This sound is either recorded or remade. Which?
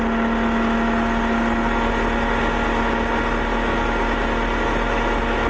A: recorded